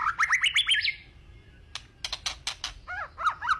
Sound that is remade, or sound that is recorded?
recorded